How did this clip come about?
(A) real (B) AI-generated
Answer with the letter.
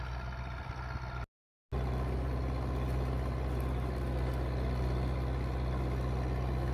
A